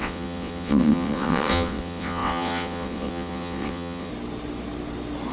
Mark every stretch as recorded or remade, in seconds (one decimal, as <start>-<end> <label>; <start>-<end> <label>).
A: 0.0-4.1 remade; 4.1-5.3 recorded